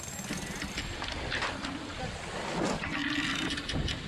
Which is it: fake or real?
real